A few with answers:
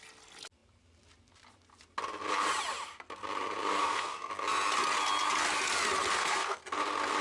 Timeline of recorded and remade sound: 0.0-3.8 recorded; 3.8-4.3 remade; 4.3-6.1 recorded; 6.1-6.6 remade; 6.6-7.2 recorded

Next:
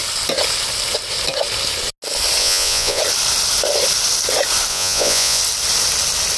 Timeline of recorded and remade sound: 0.0-2.4 recorded; 2.4-3.0 remade; 3.0-4.7 recorded; 4.7-5.4 remade; 5.4-6.4 recorded